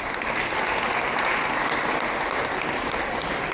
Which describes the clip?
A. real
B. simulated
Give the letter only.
A